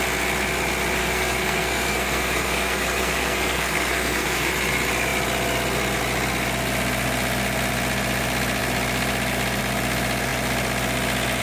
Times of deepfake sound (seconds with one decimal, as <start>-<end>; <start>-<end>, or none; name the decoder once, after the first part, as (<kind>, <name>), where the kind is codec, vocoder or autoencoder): 1.0-4.5 (codec, SNAC)